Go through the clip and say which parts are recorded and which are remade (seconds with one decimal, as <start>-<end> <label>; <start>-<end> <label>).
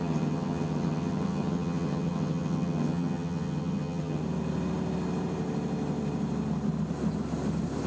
0.0-4.2 remade; 4.2-7.9 recorded